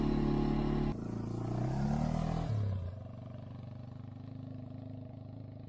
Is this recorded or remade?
recorded